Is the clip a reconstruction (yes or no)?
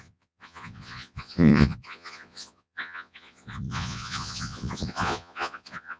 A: yes